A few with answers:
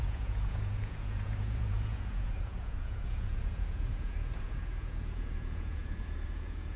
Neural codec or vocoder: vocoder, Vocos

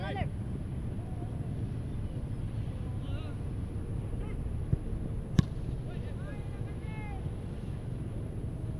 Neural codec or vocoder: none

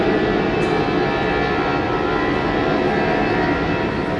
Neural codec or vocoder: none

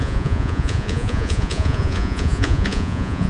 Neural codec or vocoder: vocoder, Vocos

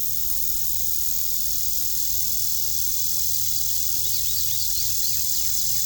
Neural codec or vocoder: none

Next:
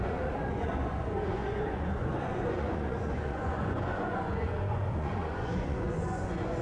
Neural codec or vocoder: vocoder, Vocos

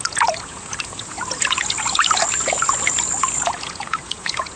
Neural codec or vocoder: vocoder, Vocos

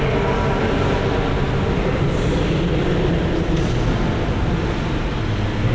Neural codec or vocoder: none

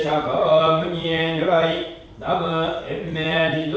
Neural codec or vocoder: vocoder, Vocos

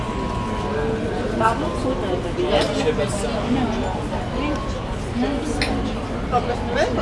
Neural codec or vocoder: none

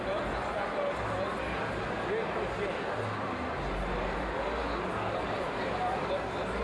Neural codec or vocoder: none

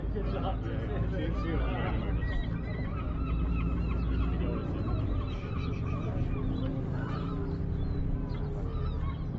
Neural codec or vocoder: none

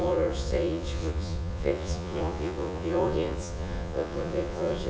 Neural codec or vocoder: vocoder, Vocos